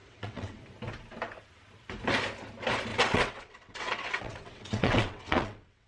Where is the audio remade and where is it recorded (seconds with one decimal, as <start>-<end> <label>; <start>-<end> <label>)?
0.0-0.6 remade; 0.6-2.9 recorded; 2.9-5.9 remade